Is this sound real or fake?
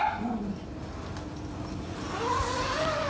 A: real